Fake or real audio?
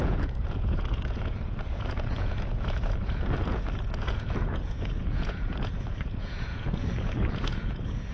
fake